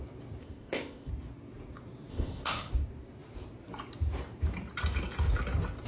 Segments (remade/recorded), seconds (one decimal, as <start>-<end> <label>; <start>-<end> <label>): 0.0-0.4 recorded; 0.4-1.1 remade; 1.1-2.1 recorded; 2.1-2.7 remade; 2.7-5.9 recorded